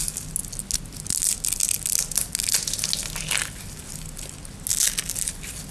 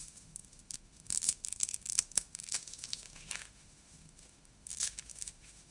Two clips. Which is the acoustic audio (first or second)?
first